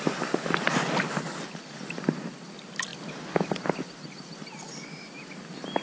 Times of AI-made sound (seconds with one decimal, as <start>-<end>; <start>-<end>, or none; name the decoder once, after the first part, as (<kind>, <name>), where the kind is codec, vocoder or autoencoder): none